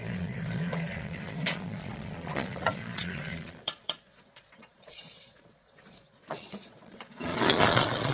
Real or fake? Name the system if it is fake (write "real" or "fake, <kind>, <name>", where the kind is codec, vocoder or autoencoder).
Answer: fake, vocoder, Vocos